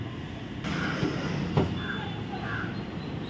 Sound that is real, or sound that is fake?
real